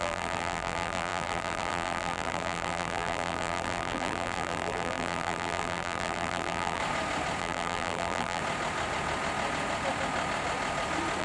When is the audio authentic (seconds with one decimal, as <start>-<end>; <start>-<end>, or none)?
6.8-7.4; 8.4-11.2